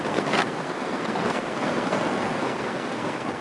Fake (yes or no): yes